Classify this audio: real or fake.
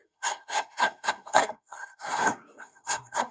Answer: fake